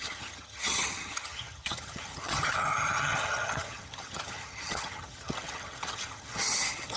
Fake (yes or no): yes